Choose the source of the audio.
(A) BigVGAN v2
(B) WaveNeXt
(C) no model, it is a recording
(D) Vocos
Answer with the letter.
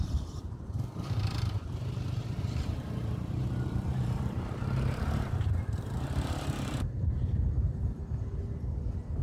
A